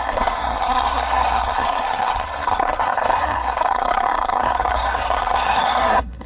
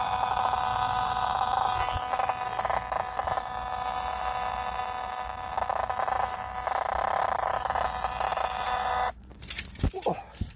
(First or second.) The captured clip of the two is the second